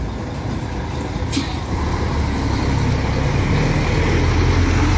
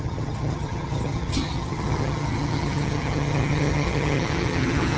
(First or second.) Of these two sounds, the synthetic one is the second